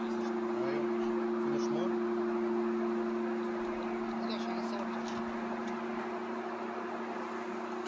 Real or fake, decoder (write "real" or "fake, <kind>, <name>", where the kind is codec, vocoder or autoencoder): real